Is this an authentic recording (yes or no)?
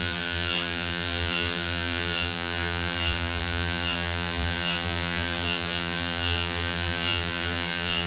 no